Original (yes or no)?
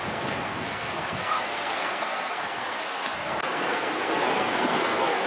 no